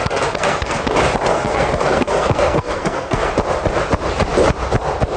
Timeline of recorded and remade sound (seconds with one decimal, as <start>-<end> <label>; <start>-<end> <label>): 0.0-0.8 remade; 0.8-1.3 recorded; 1.3-3.3 remade; 3.3-5.2 recorded